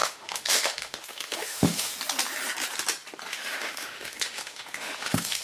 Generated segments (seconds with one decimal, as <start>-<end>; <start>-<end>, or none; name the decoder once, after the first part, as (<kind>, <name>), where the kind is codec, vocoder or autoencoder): 0.0-1.9 (autoencoder, DAC-VAE); 3.3-5.4